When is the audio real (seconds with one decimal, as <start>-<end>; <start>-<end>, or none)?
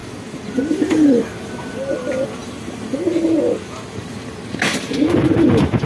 0.0-5.9